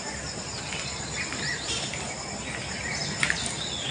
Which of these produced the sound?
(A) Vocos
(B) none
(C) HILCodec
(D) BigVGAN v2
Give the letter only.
B